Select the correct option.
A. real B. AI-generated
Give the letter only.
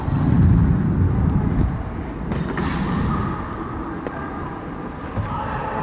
A